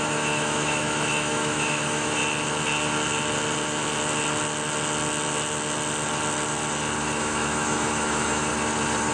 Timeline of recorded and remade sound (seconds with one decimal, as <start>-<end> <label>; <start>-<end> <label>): 0.0-2.2 remade; 2.2-7.2 recorded; 7.2-8.5 remade; 8.5-9.1 recorded